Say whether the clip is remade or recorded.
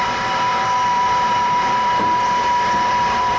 remade